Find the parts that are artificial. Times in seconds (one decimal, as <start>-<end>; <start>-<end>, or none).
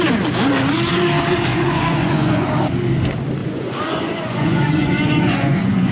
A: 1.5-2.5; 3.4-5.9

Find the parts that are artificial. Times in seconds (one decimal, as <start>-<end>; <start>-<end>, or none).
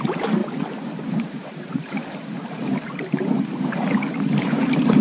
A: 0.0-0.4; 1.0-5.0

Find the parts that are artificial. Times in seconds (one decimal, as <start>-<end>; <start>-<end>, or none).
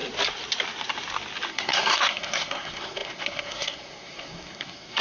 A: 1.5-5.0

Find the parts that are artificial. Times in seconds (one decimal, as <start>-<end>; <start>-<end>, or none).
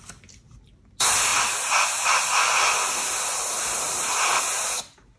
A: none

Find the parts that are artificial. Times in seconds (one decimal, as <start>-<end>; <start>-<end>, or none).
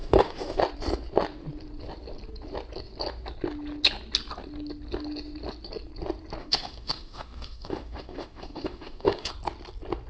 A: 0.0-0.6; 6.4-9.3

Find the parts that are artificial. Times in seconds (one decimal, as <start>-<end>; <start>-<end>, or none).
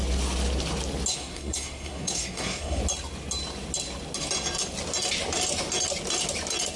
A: 1.1-2.8